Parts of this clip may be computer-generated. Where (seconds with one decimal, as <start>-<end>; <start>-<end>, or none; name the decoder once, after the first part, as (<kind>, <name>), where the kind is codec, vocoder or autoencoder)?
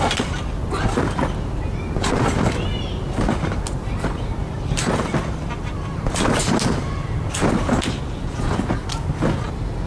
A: none